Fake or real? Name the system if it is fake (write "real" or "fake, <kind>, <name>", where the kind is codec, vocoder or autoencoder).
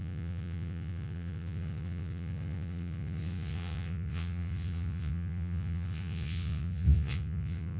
fake, vocoder, Vocos